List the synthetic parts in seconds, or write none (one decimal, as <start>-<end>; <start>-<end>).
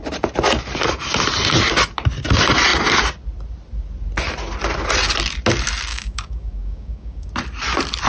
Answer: 5.9-7.3